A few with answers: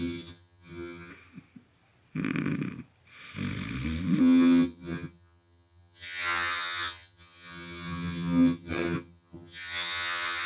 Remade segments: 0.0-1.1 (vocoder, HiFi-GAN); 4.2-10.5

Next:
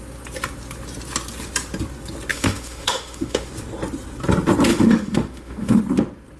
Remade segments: 2.3-3.5 (autoencoder, DAC-VAE); 4.7-5.8